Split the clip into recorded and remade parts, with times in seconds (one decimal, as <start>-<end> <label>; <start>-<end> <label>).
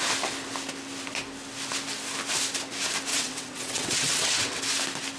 0.0-3.1 recorded; 3.1-4.6 remade; 4.6-5.2 recorded